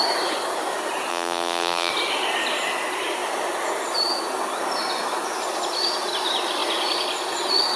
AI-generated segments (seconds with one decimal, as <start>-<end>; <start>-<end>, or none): 1.1-1.9